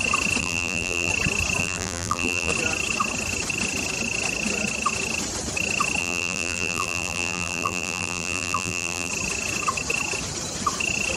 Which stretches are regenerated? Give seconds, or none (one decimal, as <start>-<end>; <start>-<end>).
0.4-1.1; 1.6-2.5; 6.0-9.1